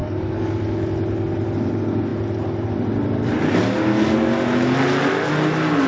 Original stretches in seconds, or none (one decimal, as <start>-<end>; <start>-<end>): 0.6-5.9